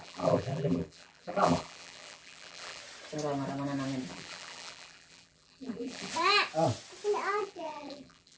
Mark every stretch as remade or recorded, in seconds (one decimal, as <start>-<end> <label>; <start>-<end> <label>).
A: 0.0-2.8 remade; 2.8-4.1 recorded; 4.1-6.1 remade; 6.1-7.4 recorded; 7.4-8.4 remade